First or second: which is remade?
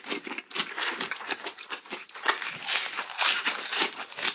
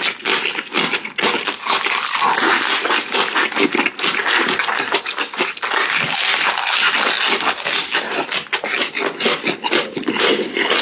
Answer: first